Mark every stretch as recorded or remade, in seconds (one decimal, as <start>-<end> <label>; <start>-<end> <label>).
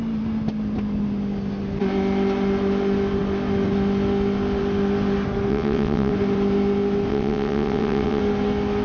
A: 0.0-5.5 recorded; 5.5-6.1 remade; 6.1-7.1 recorded; 7.1-8.2 remade; 8.2-8.8 recorded